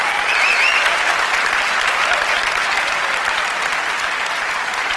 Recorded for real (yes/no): yes